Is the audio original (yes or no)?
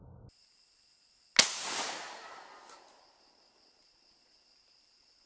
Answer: yes